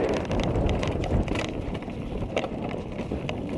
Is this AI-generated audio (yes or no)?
no